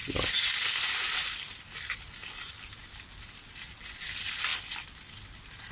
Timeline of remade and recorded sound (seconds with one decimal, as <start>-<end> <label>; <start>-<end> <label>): 0.0-4.5 recorded; 4.5-5.1 remade; 5.1-5.7 recorded